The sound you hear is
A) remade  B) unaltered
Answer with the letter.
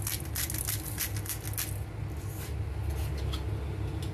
B